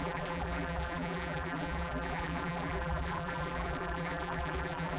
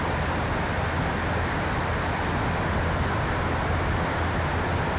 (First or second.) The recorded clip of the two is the second